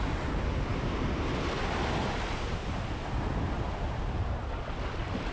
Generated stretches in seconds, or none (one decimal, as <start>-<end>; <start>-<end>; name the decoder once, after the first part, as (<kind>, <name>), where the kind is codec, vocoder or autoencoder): none